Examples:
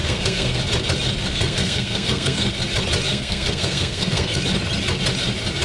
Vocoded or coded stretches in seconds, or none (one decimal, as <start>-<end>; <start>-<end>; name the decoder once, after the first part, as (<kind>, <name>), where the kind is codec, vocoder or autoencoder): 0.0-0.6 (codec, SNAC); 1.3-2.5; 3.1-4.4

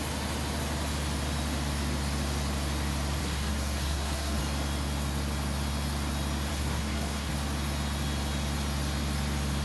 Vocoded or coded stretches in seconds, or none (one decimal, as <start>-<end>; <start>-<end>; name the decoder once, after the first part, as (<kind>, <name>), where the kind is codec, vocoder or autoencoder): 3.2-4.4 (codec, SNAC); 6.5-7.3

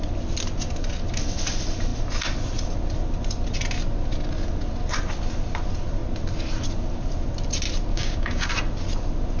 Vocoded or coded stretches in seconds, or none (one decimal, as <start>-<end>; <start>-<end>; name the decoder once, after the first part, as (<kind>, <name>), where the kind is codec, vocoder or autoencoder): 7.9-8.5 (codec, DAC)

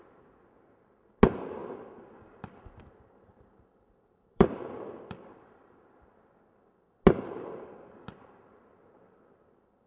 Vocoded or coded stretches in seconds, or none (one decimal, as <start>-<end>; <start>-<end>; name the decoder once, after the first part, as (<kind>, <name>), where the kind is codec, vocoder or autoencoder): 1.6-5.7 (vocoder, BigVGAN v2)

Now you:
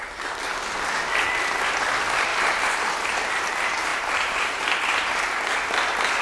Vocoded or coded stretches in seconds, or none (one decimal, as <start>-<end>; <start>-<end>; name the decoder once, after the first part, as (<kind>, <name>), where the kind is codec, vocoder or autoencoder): 2.3-2.8 (vocoder, BigVGAN v2); 3.9-4.6